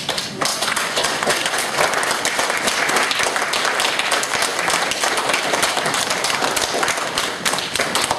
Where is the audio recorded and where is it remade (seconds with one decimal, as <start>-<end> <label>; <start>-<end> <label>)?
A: 0.0-0.5 recorded; 0.5-1.7 remade; 1.7-8.2 recorded

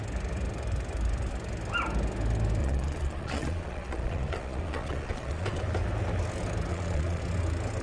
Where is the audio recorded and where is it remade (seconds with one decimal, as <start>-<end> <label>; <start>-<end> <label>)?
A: 0.0-2.6 recorded; 2.6-5.6 remade; 5.6-6.7 recorded; 6.7-7.2 remade; 7.2-7.8 recorded

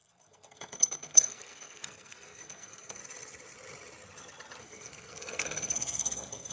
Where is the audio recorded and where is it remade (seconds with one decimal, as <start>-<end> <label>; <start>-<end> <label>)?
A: 0.0-3.0 remade; 3.0-4.6 recorded; 4.6-6.5 remade

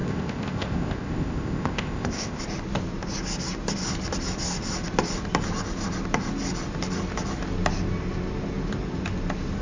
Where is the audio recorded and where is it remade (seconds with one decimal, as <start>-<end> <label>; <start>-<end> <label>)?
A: 0.0-2.4 remade; 2.4-9.6 recorded

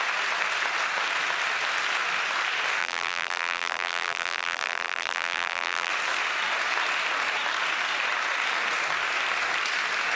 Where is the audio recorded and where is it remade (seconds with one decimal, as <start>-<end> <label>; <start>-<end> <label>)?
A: 0.0-2.8 recorded; 2.8-5.9 remade; 5.9-10.2 recorded

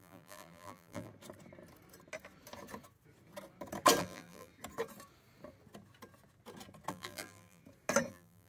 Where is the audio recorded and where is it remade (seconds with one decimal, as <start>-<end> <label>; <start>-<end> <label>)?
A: 0.0-1.1 remade; 1.1-4.0 recorded; 4.0-4.5 remade; 4.5-6.9 recorded; 6.9-7.6 remade; 7.6-8.1 recorded; 8.1-8.5 remade